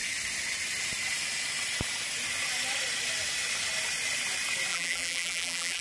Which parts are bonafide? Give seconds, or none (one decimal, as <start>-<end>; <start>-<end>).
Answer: 0.0-4.7